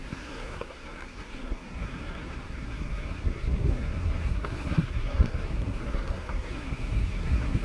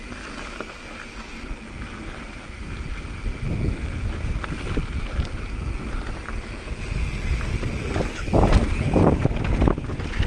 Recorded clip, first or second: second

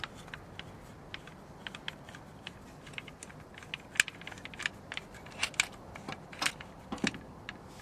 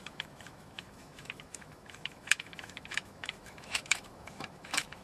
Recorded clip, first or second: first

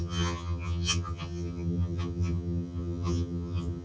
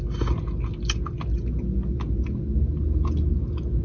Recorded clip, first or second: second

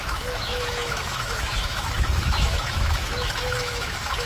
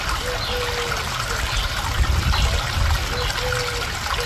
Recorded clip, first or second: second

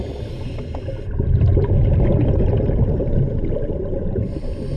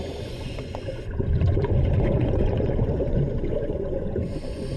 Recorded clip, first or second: first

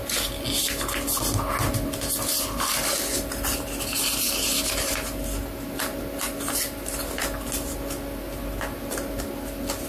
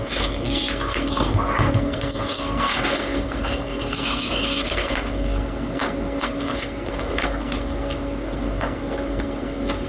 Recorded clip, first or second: first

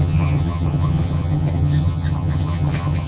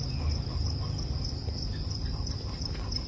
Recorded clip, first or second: second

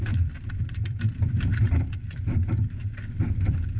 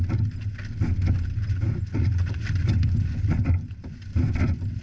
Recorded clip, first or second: second